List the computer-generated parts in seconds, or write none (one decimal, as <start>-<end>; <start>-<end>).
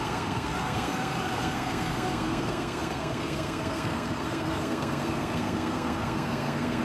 0.0-6.8